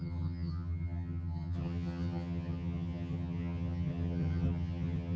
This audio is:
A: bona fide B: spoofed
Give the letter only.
B